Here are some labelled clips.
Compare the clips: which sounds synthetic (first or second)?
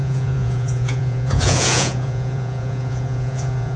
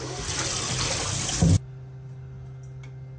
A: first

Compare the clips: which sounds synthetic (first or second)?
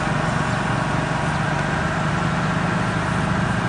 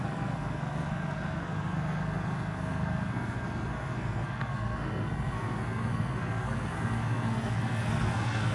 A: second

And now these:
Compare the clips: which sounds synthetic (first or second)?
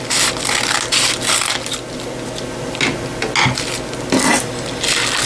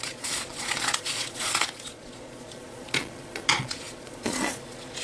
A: second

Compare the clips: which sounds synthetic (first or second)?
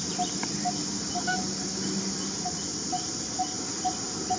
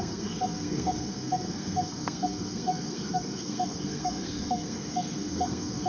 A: second